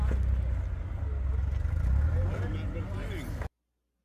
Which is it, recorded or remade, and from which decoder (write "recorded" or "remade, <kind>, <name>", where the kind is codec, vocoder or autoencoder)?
recorded